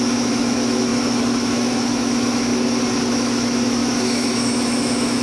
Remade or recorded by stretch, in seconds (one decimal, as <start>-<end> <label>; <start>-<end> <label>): 0.0-2.5 remade; 2.5-3.1 recorded; 3.1-5.2 remade